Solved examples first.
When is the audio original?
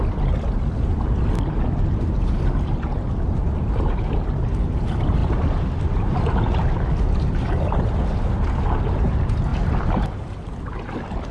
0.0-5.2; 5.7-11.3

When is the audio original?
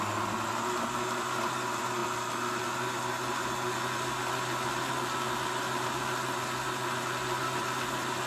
0.0-8.3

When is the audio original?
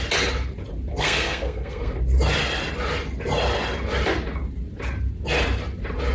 0.0-0.9; 1.9-6.1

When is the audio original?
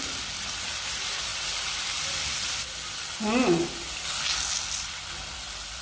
0.0-5.8